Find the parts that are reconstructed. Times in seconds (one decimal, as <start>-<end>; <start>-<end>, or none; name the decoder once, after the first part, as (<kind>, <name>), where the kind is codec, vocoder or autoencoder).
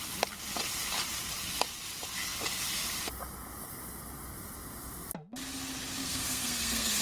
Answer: 6.0-7.0 (codec, SNAC)